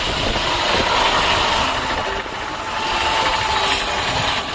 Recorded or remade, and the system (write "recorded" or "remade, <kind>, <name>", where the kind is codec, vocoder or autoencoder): recorded